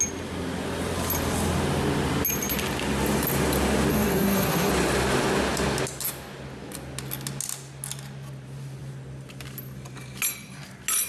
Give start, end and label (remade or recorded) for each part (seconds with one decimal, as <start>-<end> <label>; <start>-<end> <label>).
0.0-3.9 recorded; 3.9-4.7 remade; 4.7-11.1 recorded